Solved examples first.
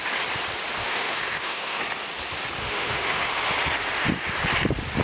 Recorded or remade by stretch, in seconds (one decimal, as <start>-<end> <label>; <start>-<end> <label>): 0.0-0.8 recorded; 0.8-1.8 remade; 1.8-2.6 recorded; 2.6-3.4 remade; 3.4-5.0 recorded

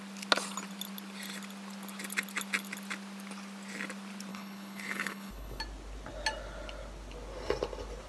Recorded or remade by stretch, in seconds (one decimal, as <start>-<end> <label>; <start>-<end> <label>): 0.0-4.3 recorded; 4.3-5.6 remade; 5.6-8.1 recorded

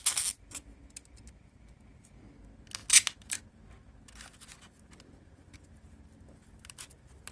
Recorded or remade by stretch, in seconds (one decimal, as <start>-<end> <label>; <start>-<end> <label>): 0.0-7.3 recorded

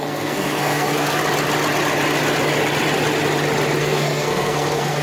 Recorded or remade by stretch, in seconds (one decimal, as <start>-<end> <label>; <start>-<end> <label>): 0.0-1.2 remade; 1.2-3.8 recorded; 3.8-5.0 remade

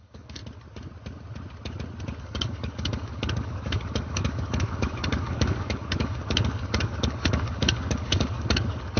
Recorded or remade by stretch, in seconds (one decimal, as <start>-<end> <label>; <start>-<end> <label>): 0.0-0.4 remade; 0.4-2.2 recorded; 2.2-9.0 remade

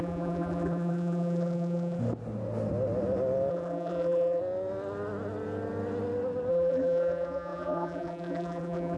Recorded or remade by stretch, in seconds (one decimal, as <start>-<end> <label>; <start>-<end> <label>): 0.0-2.0 remade; 2.0-3.5 recorded; 3.5-4.4 remade; 4.4-6.5 recorded; 6.5-9.0 remade

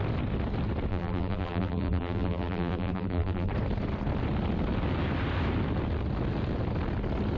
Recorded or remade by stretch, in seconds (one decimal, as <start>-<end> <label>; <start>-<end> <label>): 0.0-0.9 recorded; 0.9-3.5 remade; 3.5-7.4 recorded